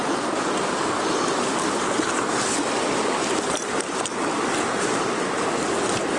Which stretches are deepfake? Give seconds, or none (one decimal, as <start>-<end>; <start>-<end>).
none